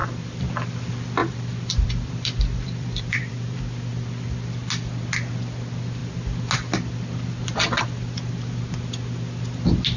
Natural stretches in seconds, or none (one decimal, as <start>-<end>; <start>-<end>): 0.5-1.2; 3.6-10.0